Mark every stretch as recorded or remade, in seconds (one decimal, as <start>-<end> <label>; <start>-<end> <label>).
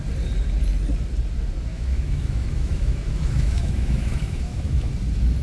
0.0-1.7 recorded; 1.7-4.9 remade; 4.9-5.4 recorded